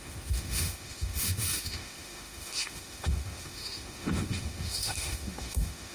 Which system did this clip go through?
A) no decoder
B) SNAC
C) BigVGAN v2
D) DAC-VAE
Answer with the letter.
D